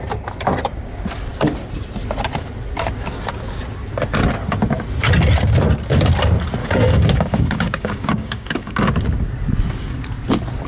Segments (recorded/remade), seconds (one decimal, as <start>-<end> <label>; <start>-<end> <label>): 0.0-6.6 recorded; 6.6-8.9 remade; 8.9-10.7 recorded